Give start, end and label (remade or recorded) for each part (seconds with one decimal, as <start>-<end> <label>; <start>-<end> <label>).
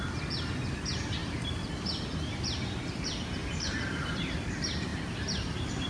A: 0.0-1.2 recorded; 1.2-2.0 remade; 2.0-3.4 recorded; 3.4-4.5 remade; 4.5-5.9 recorded